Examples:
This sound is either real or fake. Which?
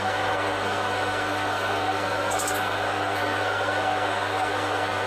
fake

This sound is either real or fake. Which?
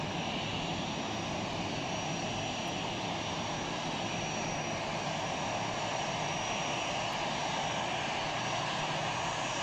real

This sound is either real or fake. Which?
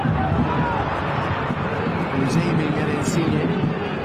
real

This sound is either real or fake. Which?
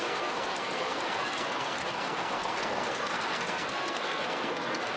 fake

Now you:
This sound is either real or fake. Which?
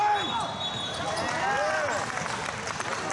real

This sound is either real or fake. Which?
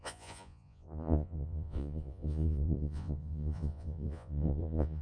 fake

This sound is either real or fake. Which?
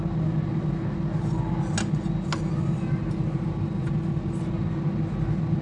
real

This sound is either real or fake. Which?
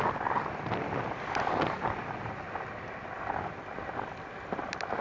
real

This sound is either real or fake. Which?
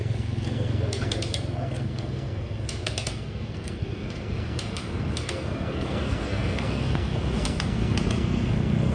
fake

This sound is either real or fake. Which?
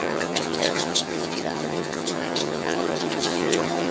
fake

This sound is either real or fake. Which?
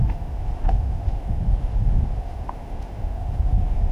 fake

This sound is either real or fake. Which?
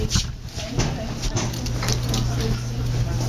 real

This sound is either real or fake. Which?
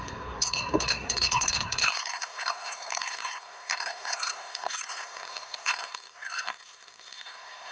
fake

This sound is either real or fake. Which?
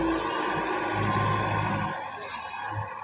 real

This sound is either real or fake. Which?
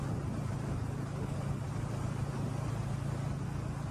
real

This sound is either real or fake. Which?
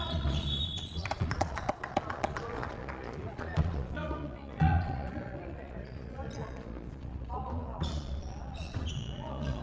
fake